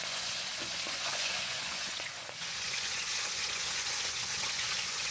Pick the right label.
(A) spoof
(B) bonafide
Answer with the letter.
A